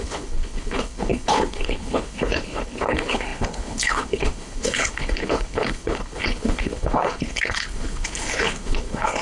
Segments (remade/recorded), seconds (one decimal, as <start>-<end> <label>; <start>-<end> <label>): 0.0-9.2 remade